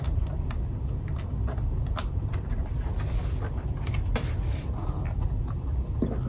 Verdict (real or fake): real